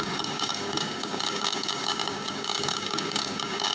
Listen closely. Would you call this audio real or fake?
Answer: fake